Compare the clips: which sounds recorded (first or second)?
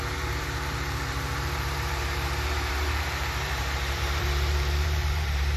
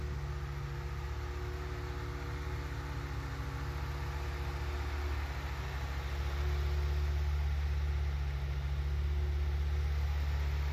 second